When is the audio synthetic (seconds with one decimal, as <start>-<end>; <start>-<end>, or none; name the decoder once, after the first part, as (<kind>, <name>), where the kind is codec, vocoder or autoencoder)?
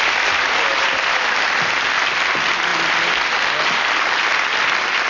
none